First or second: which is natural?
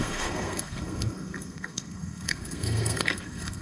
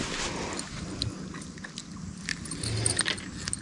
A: second